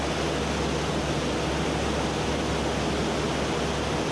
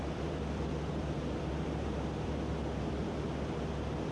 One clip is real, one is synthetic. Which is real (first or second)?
first